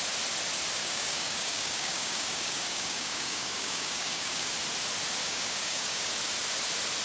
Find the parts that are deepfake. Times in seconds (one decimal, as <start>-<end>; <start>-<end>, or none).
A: 0.8-4.5; 5.2-6.1